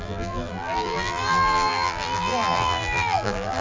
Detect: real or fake fake